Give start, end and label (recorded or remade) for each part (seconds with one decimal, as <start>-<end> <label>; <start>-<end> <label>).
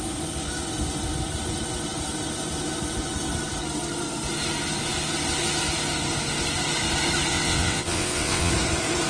0.0-7.3 recorded; 7.3-8.5 remade; 8.5-9.1 recorded